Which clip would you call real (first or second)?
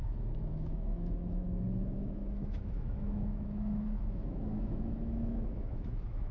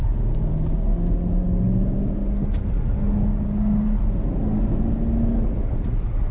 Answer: second